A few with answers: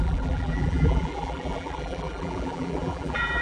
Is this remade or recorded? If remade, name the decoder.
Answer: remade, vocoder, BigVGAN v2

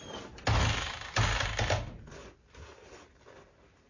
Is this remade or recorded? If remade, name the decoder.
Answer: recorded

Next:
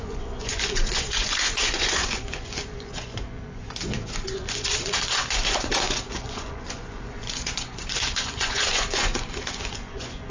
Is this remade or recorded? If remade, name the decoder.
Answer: remade, vocoder, Vocos